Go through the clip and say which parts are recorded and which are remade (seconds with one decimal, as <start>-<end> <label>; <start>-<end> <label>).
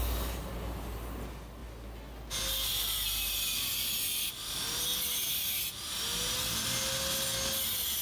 0.0-8.0 recorded